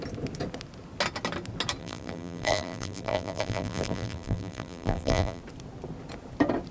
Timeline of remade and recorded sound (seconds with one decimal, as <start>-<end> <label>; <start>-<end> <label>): 0.0-1.8 recorded; 1.8-5.4 remade; 5.4-6.7 recorded